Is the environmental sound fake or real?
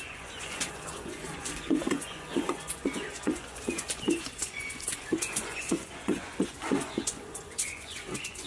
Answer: fake